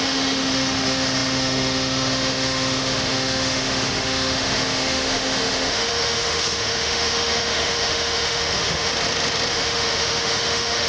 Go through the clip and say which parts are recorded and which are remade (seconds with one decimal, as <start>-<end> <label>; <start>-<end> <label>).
0.0-8.9 remade; 8.9-9.5 recorded; 9.5-10.9 remade